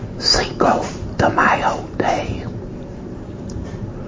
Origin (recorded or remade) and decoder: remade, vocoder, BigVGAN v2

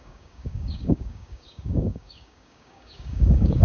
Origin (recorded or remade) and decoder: remade, codec, DAC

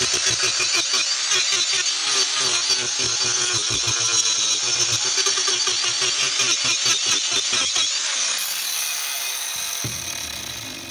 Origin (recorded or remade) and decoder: recorded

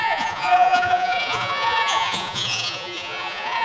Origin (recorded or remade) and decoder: remade, vocoder, Vocos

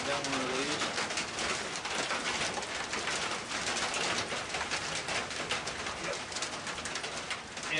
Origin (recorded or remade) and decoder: recorded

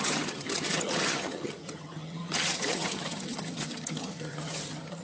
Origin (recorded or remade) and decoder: remade, vocoder, HiFi-GAN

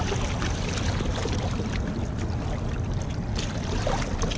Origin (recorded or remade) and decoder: recorded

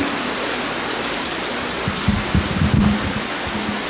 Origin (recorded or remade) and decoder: recorded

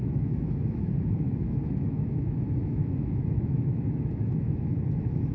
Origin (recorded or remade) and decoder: remade, autoencoder, DAC-VAE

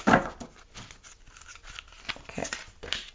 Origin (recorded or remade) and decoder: recorded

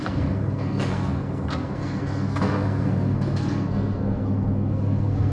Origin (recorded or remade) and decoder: remade, codec, SNAC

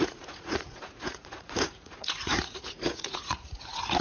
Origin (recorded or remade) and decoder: remade, vocoder, Vocos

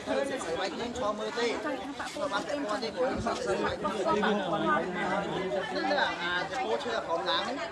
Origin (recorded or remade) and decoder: recorded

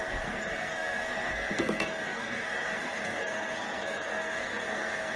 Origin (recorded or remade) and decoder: remade, codec, SNAC